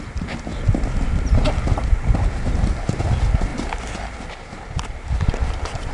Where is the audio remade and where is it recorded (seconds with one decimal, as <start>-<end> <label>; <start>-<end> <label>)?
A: 0.0-5.9 recorded